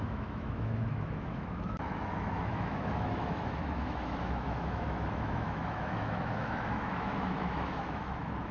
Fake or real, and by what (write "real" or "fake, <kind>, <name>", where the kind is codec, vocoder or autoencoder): fake, autoencoder, DAC-VAE